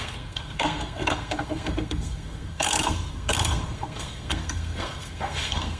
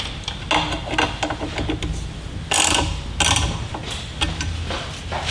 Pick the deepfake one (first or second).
first